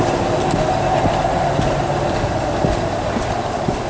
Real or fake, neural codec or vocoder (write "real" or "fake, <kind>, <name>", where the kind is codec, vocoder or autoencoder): real